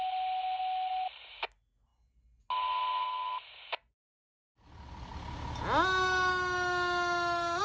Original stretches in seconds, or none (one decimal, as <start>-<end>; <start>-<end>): 0.0-7.6